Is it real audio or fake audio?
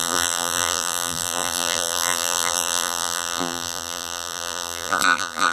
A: fake